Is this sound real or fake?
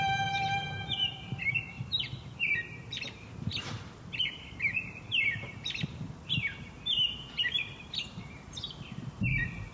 fake